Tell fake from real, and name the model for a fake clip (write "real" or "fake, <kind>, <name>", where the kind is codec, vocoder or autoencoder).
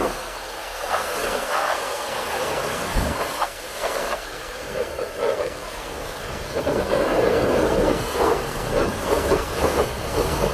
fake, codec, SNAC